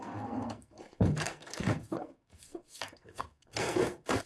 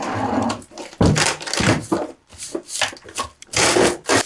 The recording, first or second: second